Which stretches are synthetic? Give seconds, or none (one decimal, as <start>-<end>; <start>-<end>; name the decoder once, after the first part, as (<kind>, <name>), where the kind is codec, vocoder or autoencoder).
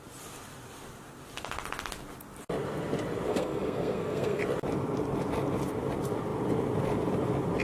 3.3-4.4 (codec, SNAC)